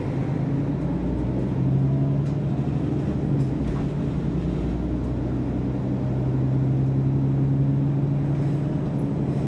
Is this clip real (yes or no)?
yes